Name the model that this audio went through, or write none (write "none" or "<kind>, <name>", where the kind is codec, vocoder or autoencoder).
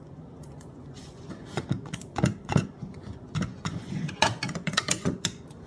vocoder, Vocos